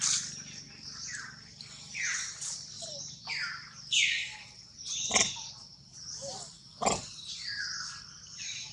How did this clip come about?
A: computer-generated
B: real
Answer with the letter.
B